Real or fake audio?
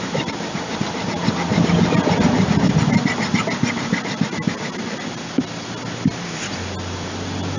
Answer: real